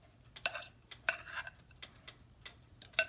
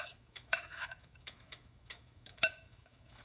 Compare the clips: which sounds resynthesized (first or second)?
second